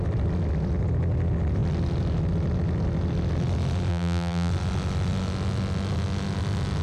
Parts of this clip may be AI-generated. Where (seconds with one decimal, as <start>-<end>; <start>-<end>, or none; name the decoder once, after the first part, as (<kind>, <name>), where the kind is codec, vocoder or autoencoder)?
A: 3.9-4.5 (vocoder, BigVGAN v2)